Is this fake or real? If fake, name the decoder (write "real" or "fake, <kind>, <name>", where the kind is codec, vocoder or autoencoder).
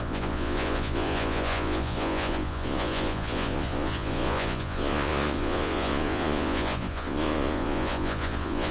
fake, vocoder, Vocos